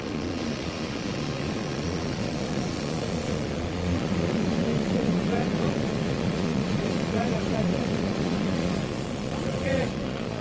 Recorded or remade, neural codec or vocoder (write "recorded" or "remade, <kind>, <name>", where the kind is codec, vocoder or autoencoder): remade, vocoder, Vocos